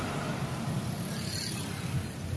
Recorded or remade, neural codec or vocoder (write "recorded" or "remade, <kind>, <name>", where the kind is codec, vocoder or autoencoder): recorded